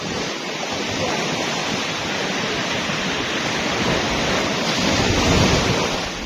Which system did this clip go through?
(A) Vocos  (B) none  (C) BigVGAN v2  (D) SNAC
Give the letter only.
B